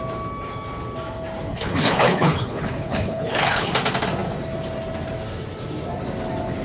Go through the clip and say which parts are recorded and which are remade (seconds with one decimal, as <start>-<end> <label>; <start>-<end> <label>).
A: 0.0-1.5 recorded; 1.5-3.7 remade; 3.7-6.6 recorded